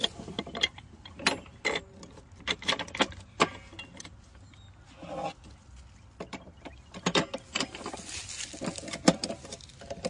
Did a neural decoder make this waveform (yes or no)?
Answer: no